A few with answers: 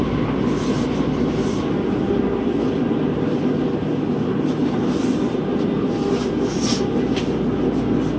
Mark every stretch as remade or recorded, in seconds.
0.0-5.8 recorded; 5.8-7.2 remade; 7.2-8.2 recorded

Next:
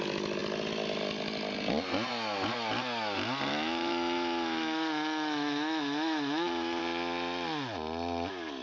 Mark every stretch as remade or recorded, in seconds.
0.0-3.5 recorded; 3.5-6.8 remade; 6.8-8.6 recorded